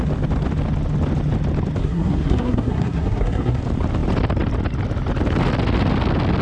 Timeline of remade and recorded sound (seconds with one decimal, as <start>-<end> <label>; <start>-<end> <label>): 0.0-1.8 recorded; 1.8-3.6 remade; 3.6-6.4 recorded